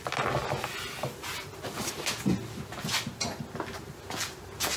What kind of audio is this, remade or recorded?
recorded